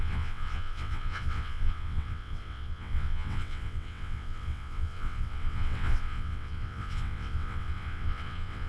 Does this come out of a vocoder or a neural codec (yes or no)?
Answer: yes